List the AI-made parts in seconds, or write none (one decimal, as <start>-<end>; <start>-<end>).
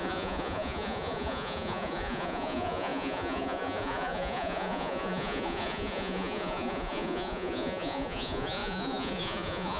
0.0-9.8